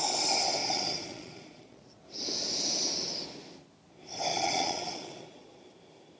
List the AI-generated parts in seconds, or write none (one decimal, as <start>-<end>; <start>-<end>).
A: 0.6-2.0; 4.3-5.6